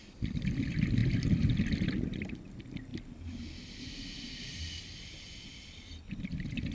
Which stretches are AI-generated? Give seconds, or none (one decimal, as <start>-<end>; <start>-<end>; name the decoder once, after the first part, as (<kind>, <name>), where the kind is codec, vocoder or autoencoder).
none